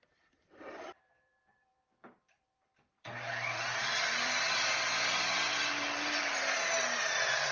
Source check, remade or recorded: remade